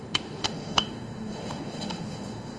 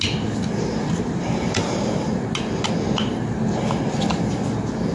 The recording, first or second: second